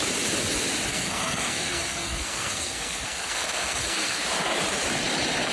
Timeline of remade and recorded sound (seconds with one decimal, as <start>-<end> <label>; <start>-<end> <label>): 0.0-0.9 recorded; 0.9-4.2 remade; 4.2-5.5 recorded

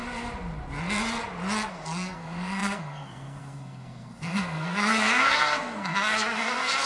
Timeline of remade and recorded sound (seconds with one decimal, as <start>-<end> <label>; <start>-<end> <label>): 0.0-1.7 recorded; 1.7-6.9 remade

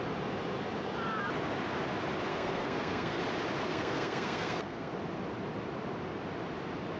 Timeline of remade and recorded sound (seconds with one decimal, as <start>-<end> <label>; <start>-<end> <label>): 0.0-2.3 recorded; 2.3-3.2 remade; 3.2-3.7 recorded; 3.7-4.9 remade; 4.9-7.0 recorded

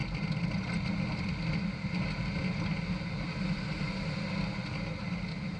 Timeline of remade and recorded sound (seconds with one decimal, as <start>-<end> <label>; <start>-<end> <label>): 0.0-5.6 recorded

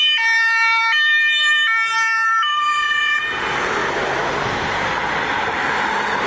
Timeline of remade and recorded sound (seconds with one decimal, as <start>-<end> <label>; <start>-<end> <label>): 0.0-6.3 recorded

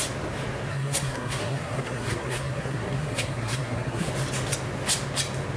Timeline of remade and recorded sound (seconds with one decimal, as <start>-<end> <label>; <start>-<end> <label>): 0.0-0.7 recorded; 0.7-4.1 remade; 4.1-5.6 recorded

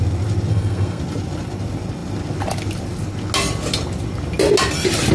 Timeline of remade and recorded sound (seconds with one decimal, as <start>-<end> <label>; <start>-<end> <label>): 0.0-0.5 recorded; 0.5-1.0 remade; 1.0-5.1 recorded

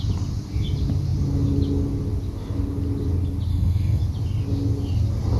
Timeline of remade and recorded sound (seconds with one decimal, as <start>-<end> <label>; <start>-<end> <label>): 0.0-3.5 recorded; 3.5-4.0 remade; 4.0-5.4 recorded